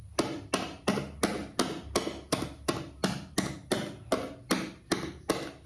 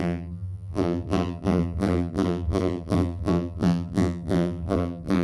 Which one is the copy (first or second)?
second